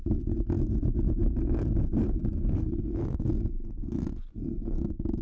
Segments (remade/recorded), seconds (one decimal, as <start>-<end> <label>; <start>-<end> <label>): 0.0-5.2 recorded